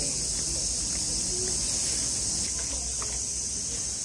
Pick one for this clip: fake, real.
real